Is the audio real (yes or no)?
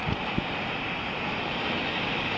yes